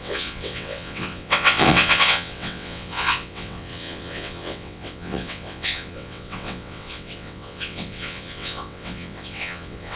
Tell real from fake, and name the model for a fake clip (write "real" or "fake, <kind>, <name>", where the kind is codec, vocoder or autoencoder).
fake, vocoder, WaveNeXt